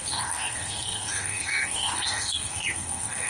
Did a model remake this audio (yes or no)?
yes